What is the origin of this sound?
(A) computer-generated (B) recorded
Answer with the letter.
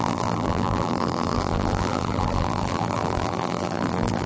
A